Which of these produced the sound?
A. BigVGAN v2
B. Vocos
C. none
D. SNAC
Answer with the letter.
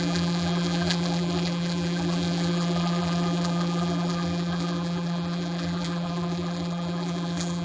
A